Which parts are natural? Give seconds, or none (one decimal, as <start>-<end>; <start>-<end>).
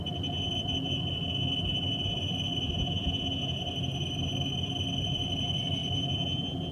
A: 0.0-6.7